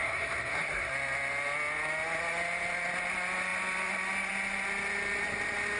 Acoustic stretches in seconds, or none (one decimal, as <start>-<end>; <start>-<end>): 0.9-5.8